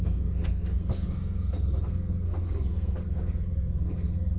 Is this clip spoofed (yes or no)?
yes